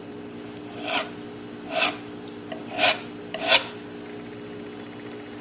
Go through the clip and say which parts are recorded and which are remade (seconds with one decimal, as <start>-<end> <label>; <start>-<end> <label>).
0.0-5.4 recorded